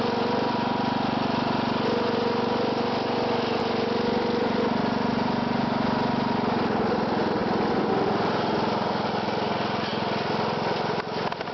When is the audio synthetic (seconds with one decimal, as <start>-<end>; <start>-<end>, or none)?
none

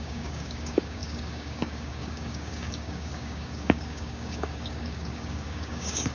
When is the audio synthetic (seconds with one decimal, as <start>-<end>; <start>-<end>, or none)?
0.0-6.1

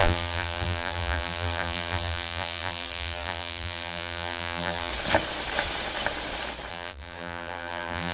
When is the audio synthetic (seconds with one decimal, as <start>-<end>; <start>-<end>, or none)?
0.0-4.9; 6.7-8.1

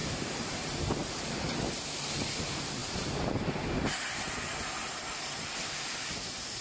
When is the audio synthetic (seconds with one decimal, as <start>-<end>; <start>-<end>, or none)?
0.0-1.1